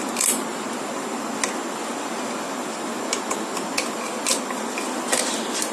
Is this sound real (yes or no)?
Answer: yes